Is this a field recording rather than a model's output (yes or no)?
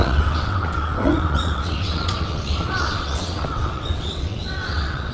no